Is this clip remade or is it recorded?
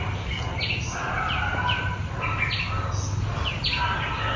recorded